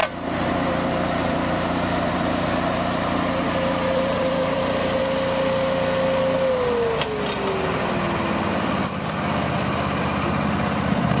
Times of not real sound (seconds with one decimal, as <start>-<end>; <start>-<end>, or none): 0.0-5.0